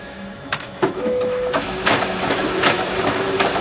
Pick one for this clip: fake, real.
fake